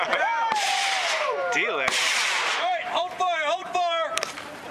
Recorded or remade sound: remade